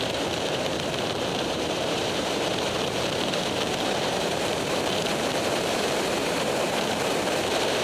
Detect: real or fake fake